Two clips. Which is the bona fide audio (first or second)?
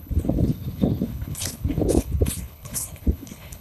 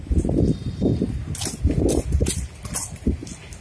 second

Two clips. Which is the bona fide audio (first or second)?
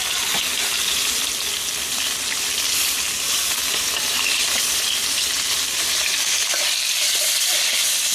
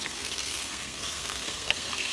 first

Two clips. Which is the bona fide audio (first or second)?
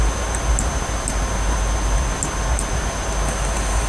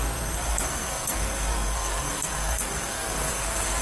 first